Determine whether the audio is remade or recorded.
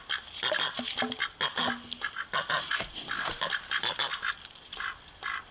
recorded